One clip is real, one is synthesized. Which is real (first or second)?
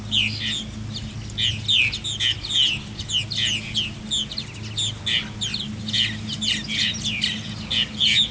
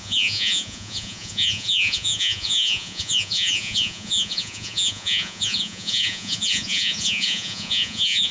first